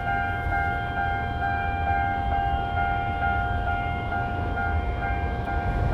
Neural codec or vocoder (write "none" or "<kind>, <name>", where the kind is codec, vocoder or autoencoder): autoencoder, DAC-VAE